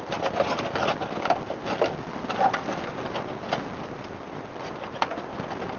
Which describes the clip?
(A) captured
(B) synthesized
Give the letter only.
A